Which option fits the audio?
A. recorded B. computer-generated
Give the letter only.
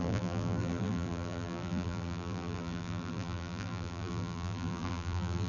B